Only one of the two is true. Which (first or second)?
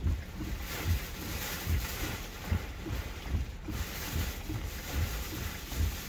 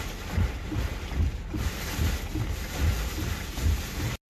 second